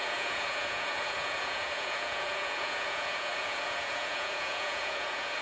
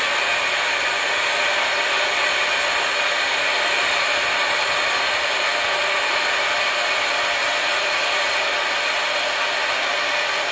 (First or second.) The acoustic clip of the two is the second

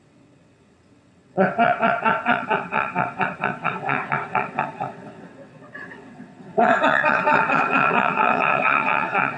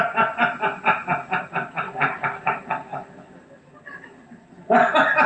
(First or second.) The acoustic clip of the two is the second